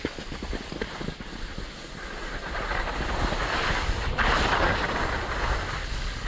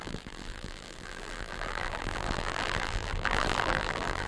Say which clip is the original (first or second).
first